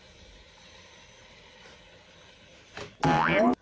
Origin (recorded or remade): recorded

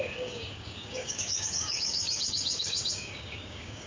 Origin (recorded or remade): remade